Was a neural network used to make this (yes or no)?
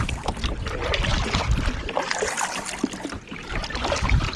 no